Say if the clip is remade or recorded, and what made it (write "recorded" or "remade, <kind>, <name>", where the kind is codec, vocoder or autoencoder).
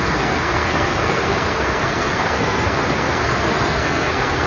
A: remade, codec, SNAC